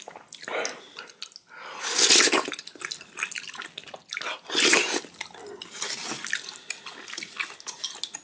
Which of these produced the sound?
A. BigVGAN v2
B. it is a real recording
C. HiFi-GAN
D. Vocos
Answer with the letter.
B